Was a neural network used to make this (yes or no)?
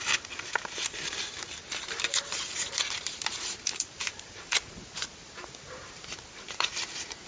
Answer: yes